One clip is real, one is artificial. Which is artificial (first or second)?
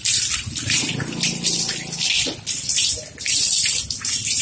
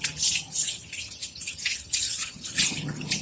second